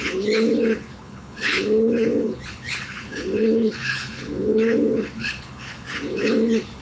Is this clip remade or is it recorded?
remade